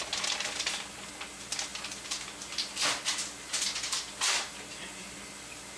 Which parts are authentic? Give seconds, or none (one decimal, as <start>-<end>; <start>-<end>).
none